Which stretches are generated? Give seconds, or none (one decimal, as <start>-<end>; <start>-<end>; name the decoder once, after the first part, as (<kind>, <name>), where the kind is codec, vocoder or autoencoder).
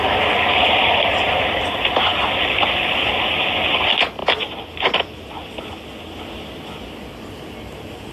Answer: none